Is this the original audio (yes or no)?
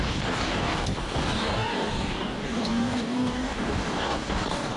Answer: no